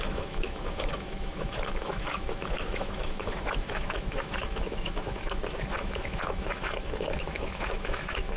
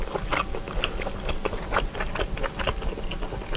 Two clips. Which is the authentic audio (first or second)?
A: second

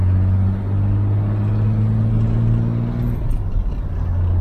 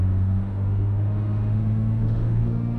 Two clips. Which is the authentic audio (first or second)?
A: first